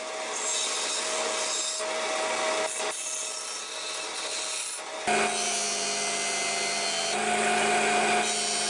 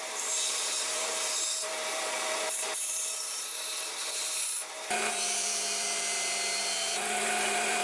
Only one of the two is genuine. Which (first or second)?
first